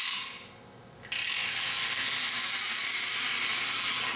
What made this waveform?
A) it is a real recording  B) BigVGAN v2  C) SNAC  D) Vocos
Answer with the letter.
A